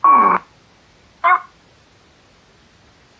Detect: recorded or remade recorded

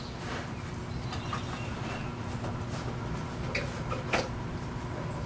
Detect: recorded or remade recorded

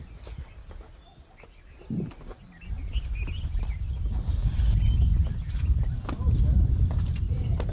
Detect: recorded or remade recorded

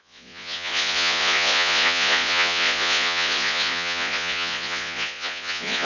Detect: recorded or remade remade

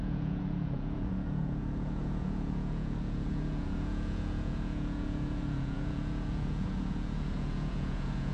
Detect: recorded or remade remade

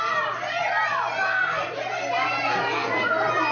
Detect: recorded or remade recorded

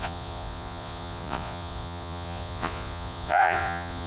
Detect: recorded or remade remade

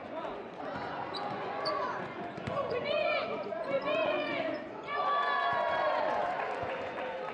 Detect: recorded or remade remade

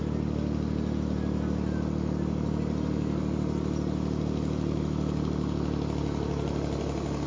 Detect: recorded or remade recorded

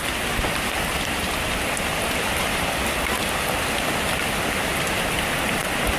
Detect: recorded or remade recorded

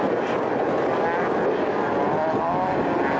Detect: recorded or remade recorded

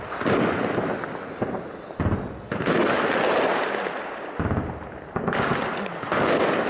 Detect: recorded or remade recorded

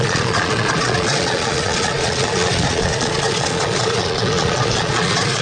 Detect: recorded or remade remade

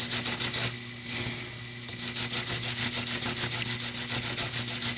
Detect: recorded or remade recorded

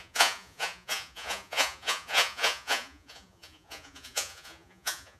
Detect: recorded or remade remade